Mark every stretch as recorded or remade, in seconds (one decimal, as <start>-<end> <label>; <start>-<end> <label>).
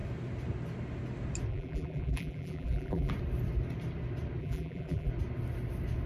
0.0-1.5 recorded; 1.5-3.1 remade; 3.1-4.4 recorded; 4.4-5.1 remade; 5.1-6.1 recorded